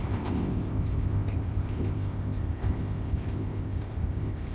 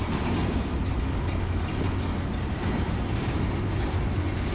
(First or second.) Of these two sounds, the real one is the second